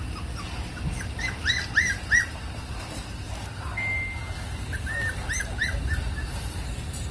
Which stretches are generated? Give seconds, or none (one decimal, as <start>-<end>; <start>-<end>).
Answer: none